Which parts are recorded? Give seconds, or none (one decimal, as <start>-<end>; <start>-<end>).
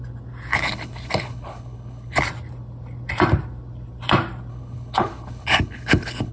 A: 0.0-0.5; 2.2-4.5